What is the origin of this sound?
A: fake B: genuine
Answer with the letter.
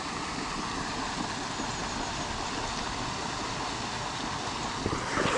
B